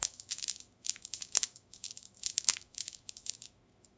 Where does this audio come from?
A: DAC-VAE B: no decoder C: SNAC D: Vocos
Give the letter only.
A